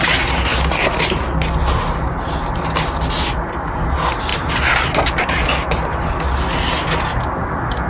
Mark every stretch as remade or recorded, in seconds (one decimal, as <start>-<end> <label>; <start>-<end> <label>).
0.0-7.9 recorded